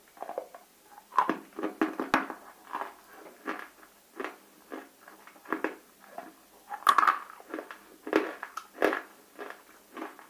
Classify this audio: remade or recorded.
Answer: recorded